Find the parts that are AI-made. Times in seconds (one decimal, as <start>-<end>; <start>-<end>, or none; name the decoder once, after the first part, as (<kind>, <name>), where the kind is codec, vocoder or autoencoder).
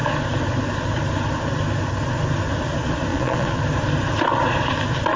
3.1-3.6 (vocoder, Vocos)